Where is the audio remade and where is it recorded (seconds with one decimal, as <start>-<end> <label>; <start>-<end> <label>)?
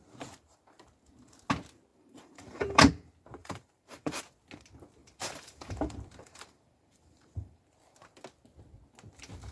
0.0-1.9 recorded; 1.9-2.9 remade; 2.9-3.4 recorded; 3.4-4.2 remade; 4.2-5.0 recorded; 5.0-7.6 remade; 7.6-9.5 recorded